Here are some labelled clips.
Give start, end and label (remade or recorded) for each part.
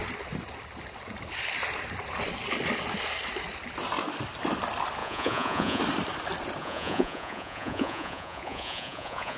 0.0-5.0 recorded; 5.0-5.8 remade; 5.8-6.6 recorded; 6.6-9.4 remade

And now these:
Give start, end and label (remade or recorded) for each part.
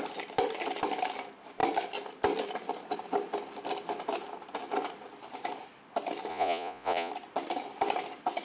0.0-6.3 recorded; 6.3-7.1 remade; 7.1-8.4 recorded